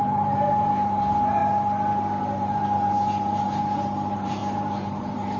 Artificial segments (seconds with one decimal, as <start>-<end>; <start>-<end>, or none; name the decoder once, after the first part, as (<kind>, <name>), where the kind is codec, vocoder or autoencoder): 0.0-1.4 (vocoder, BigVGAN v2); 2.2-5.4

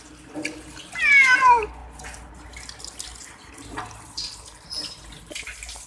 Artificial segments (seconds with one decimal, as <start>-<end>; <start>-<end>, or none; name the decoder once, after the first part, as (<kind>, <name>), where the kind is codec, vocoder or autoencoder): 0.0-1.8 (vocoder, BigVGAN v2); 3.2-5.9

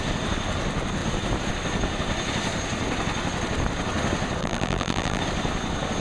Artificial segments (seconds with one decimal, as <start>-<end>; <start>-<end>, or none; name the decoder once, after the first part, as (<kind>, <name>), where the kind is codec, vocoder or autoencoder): 4.4-5.2 (vocoder, BigVGAN v2)